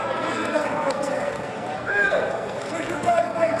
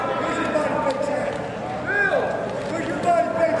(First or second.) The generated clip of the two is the first